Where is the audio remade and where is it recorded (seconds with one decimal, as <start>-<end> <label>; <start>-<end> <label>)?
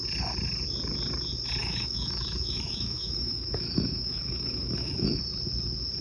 0.0-1.6 recorded; 1.6-5.2 remade; 5.2-6.0 recorded